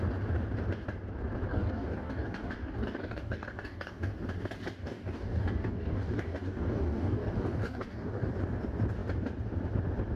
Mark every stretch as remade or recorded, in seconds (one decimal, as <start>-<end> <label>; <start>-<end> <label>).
0.0-1.5 recorded; 1.5-4.1 remade; 4.1-4.8 recorded; 4.8-8.3 remade; 8.3-10.2 recorded